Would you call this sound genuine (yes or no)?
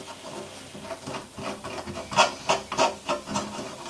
yes